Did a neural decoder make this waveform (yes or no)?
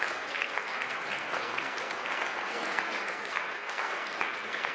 yes